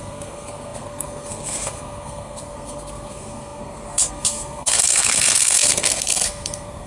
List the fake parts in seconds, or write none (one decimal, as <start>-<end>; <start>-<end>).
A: 0.0-6.9